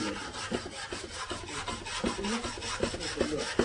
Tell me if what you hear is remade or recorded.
recorded